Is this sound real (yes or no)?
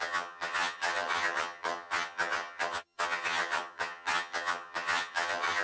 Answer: no